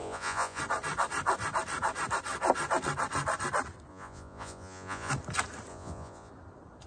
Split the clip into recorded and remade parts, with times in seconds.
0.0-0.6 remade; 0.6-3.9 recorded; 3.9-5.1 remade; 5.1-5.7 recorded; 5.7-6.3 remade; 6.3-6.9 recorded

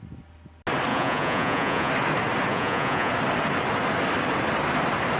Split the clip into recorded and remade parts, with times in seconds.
0.0-0.9 recorded; 0.9-1.9 remade; 1.9-2.5 recorded; 2.5-3.1 remade; 3.1-5.2 recorded

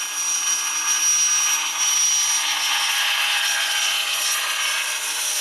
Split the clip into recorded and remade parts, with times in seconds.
0.0-2.5 recorded; 2.5-4.8 remade; 4.8-5.4 recorded

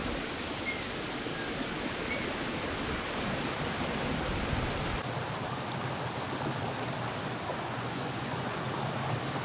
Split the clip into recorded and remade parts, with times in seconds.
0.0-7.5 recorded; 7.5-8.6 remade; 8.6-9.4 recorded

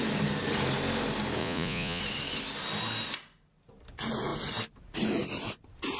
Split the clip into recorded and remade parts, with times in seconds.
0.0-1.4 recorded; 1.4-2.0 remade; 2.0-6.0 recorded

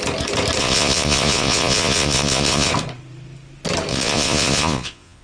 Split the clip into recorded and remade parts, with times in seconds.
0.0-0.6 recorded; 0.6-2.7 remade; 2.7-3.9 recorded; 3.9-5.2 remade